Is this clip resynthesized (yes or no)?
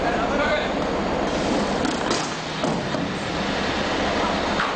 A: no